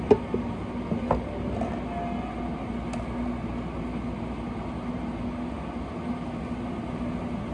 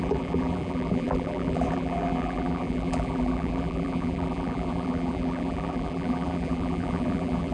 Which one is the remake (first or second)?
second